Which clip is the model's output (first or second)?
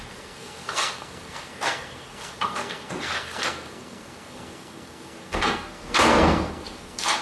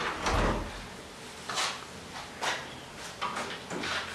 first